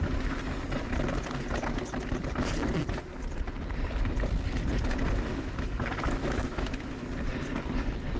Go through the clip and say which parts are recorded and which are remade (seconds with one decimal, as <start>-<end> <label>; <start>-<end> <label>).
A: 0.0-5.3 recorded; 5.3-7.0 remade; 7.0-8.2 recorded